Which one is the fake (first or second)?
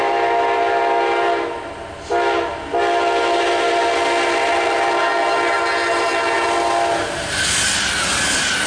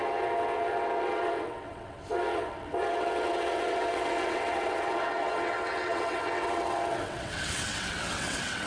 second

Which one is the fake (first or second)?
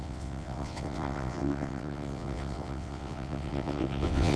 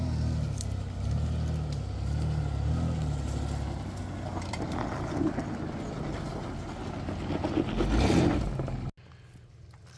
first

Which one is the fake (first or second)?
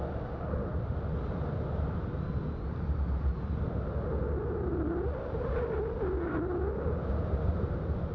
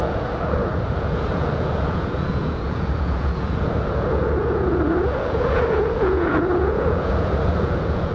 second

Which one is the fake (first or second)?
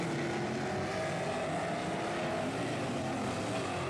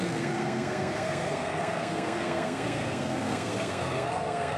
second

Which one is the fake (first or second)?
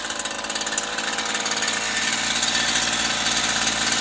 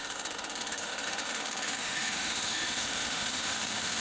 second